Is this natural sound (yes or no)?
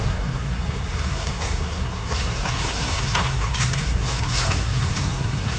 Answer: no